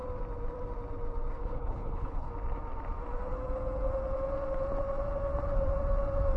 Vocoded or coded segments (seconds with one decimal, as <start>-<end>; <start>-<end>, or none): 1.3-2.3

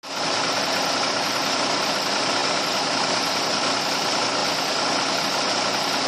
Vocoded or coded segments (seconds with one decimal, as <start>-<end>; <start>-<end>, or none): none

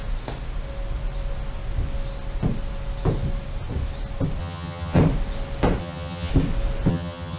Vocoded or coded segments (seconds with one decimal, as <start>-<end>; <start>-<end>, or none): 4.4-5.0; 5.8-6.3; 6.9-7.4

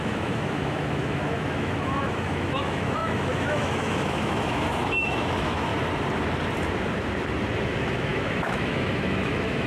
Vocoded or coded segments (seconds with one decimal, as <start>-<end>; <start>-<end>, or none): 0.0-5.7; 7.6-9.7

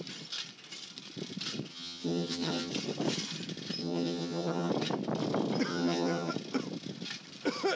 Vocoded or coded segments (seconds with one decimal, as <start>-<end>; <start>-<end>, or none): 1.7-2.7; 3.8-4.7; 5.7-6.3

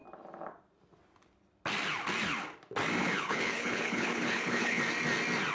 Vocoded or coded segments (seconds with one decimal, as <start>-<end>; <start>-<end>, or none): 3.0-4.8

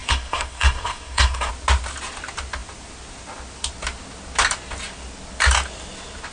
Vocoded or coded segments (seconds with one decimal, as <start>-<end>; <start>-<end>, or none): 0.0-1.5